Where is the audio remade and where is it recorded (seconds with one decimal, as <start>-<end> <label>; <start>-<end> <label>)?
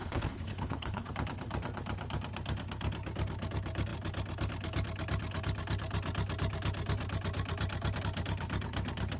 0.0-1.1 remade; 1.1-9.2 recorded